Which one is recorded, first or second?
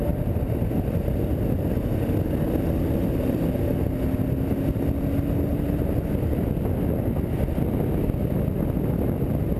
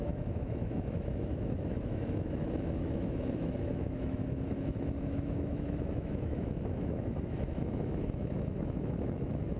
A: first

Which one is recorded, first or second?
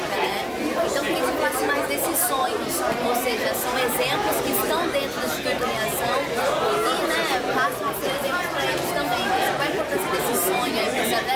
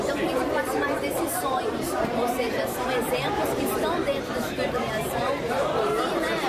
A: first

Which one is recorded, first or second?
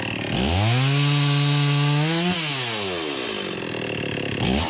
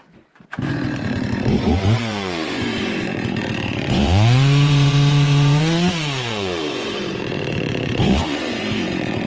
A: first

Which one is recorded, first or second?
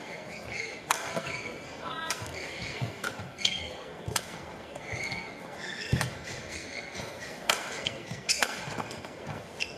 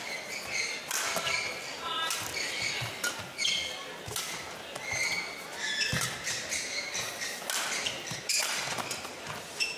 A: second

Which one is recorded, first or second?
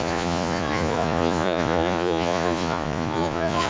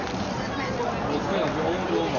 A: second